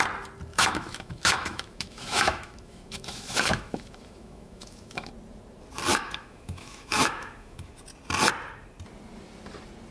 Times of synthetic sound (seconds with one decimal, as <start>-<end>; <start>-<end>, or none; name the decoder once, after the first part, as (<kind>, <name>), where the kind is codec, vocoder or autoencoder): 0.5-5.1 (autoencoder, DAC-VAE); 5.9-7.7